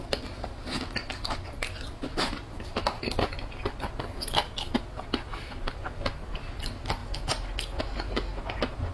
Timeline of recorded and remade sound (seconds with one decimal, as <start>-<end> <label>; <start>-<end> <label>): 0.0-8.9 recorded